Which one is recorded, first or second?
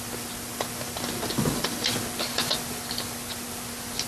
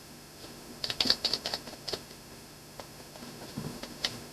first